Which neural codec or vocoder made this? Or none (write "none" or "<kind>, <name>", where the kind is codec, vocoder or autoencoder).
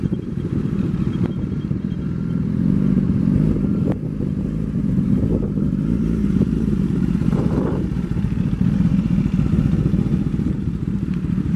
vocoder, BigVGAN v2